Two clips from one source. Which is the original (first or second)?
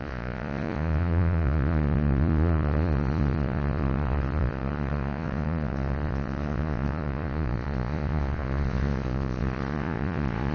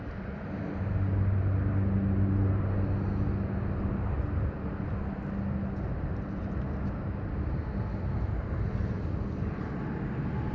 second